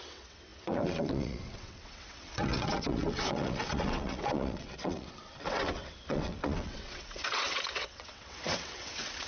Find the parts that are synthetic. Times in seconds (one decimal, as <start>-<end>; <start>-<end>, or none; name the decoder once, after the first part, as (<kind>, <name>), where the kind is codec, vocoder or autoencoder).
0.0-9.3 (vocoder, WaveNeXt)